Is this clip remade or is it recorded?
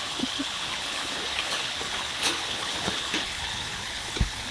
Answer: remade